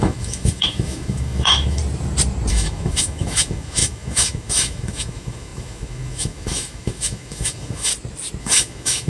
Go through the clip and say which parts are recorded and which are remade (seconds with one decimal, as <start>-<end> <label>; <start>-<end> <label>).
0.0-1.8 remade; 1.8-2.5 recorded; 2.5-7.9 remade; 7.9-8.4 recorded; 8.4-9.1 remade